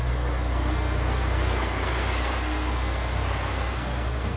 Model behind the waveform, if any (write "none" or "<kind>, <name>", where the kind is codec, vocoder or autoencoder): codec, SNAC